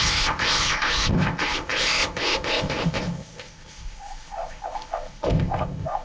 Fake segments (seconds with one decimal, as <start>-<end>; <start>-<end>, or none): 0.0-6.0

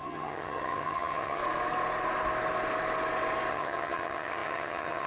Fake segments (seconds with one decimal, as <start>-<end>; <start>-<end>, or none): 0.0-1.4; 3.5-5.1

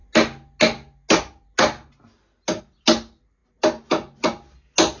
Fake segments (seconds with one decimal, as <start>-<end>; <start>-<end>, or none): none

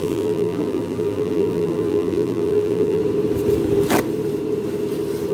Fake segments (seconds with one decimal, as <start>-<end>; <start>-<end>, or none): 0.0-3.0